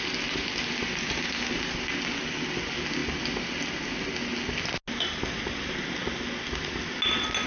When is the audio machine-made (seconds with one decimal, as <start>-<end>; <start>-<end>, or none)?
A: none